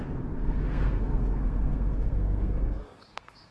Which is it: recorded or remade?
remade